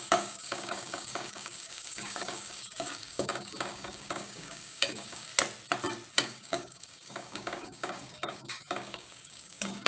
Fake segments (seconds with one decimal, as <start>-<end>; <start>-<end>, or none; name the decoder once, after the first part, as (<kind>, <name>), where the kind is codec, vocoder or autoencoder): 0.0-5.3 (codec, DAC); 6.1-9.9